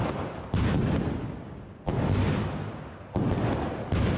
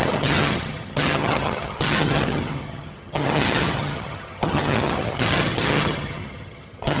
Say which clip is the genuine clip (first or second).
first